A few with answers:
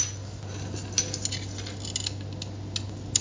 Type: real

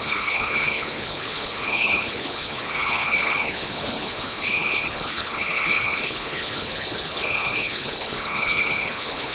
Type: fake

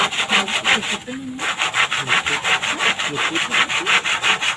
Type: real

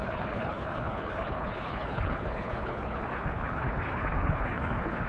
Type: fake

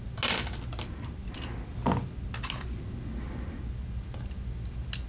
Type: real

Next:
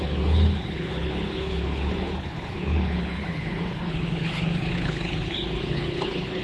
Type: fake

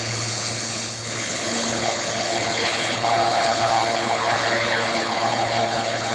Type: fake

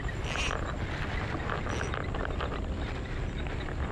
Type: real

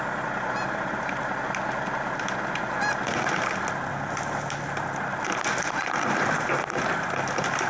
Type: real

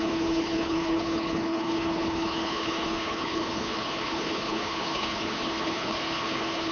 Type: fake